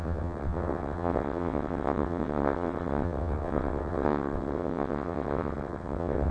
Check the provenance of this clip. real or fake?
fake